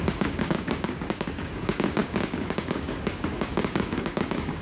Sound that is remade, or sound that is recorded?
remade